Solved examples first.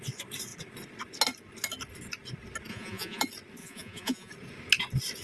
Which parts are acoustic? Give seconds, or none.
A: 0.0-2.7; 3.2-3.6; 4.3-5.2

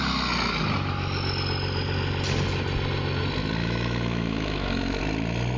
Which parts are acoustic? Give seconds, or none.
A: 0.0-3.6; 5.0-5.6

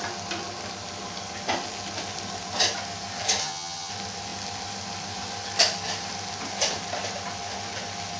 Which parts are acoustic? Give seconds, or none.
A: 0.0-3.4; 3.9-8.2

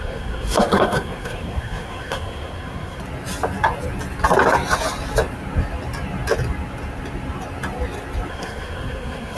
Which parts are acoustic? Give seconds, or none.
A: 3.0-8.3

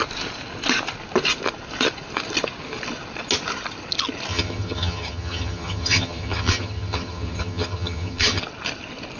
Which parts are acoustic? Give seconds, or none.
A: 0.0-4.3; 8.4-9.2